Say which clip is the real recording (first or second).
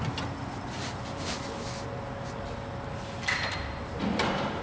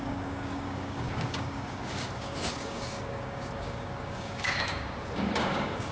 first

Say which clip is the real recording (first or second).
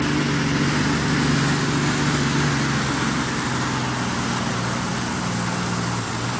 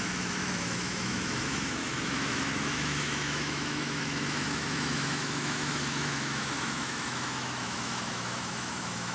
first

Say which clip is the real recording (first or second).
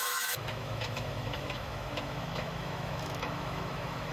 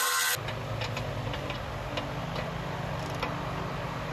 second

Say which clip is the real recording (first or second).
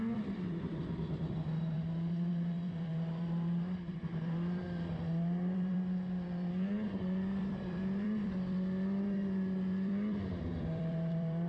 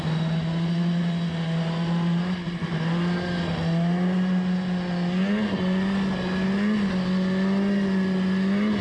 second